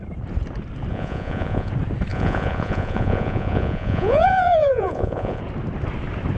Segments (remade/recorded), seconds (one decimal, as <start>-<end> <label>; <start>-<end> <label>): 0.0-0.9 recorded; 0.9-1.7 remade; 1.7-2.1 recorded; 2.1-5.4 remade; 5.4-6.4 recorded